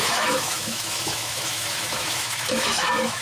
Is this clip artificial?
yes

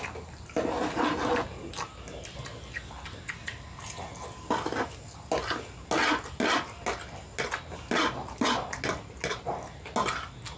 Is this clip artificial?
no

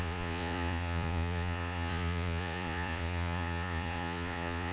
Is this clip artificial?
yes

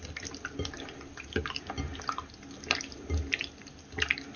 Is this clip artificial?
no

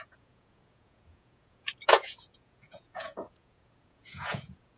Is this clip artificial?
yes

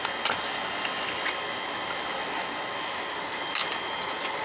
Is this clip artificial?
no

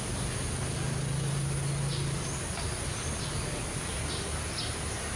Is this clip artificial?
no